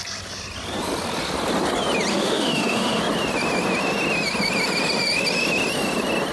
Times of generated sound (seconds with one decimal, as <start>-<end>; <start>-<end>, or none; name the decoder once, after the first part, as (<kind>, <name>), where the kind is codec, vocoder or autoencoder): 2.1-3.0 (autoencoder, DAC-VAE)